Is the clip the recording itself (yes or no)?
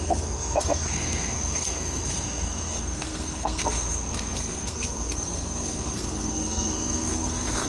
no